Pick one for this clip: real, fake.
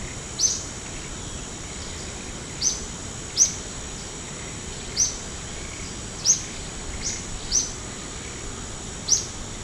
real